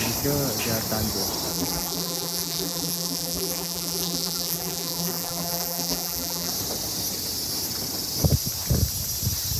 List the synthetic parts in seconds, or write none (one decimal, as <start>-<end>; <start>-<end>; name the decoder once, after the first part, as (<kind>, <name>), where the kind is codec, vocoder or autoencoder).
1.5-6.5 (vocoder, BigVGAN v2)